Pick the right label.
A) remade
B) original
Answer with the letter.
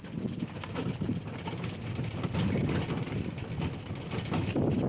B